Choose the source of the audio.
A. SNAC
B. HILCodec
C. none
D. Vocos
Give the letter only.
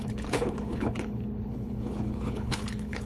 B